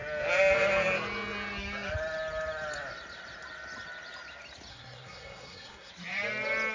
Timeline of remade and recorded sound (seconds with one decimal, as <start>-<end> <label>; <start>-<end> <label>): 0.0-4.7 recorded; 4.7-5.9 remade; 5.9-6.7 recorded